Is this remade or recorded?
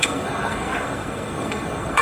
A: remade